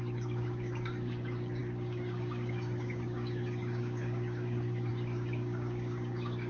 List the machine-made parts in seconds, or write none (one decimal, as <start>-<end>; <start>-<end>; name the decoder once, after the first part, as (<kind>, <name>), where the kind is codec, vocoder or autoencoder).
0.0-6.5 (codec, DAC)